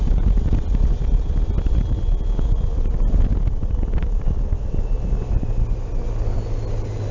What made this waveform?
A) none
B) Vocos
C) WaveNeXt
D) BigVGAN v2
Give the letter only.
A